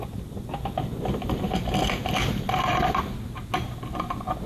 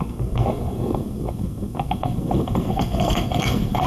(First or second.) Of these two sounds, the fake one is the second